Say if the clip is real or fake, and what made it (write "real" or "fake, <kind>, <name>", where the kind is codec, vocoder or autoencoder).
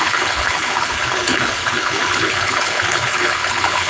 fake, codec, HILCodec